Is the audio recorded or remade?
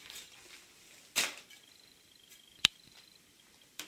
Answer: remade